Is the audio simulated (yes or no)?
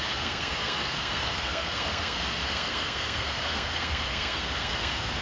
yes